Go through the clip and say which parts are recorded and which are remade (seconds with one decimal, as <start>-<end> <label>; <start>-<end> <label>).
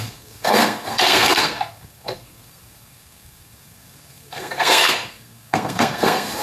0.0-6.4 remade